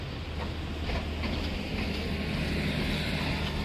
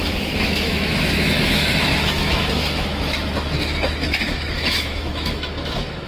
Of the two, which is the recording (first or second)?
first